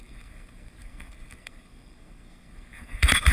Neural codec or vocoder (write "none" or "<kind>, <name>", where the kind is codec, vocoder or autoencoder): codec, SNAC